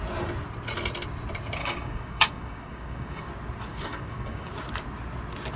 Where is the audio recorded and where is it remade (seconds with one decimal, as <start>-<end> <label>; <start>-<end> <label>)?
0.0-1.6 recorded; 1.6-3.3 remade; 3.3-3.7 recorded; 3.7-4.5 remade; 4.5-5.6 recorded